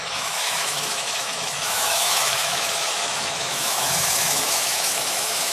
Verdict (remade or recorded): remade